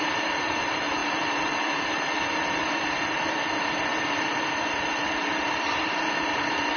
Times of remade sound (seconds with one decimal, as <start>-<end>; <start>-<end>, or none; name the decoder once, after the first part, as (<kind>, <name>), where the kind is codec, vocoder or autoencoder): none